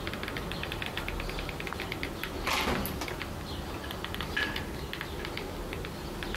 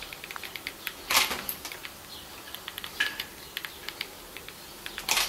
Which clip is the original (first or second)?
first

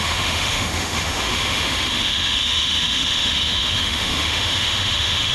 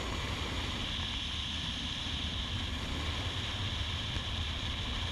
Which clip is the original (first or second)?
second